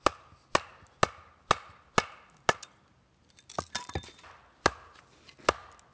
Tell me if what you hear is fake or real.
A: real